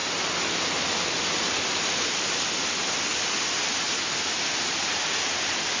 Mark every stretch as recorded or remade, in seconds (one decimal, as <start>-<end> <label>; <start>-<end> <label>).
0.0-5.8 recorded